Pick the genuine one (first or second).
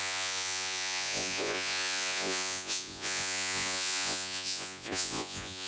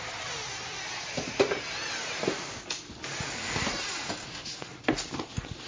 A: second